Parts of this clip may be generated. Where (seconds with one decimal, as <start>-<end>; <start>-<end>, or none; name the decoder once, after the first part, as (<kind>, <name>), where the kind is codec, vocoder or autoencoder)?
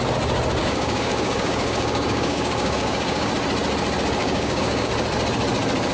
0.6-3.3 (codec, DAC); 4.2-4.9